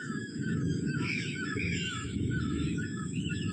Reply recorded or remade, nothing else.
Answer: remade